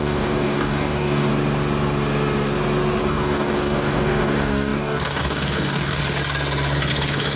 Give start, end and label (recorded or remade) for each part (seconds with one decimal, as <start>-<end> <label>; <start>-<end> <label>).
0.0-1.3 remade; 1.3-3.0 recorded; 3.0-6.0 remade; 6.0-6.9 recorded; 6.9-7.4 remade

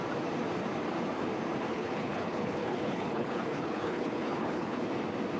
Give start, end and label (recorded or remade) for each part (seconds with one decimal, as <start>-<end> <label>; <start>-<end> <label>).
0.0-1.7 recorded; 1.7-4.9 remade; 4.9-5.4 recorded

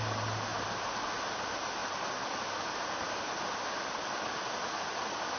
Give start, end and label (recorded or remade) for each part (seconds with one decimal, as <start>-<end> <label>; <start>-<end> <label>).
0.0-5.4 recorded

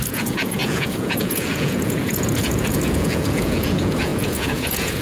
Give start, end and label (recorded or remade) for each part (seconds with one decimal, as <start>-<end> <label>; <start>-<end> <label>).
0.0-5.0 remade

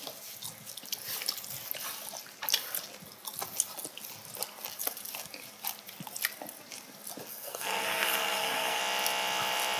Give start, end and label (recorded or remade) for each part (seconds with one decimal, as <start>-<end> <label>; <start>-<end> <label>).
0.0-7.3 recorded; 7.3-8.8 remade; 8.8-9.8 recorded